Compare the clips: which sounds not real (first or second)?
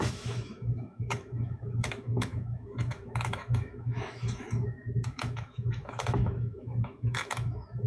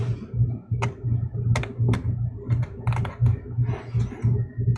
first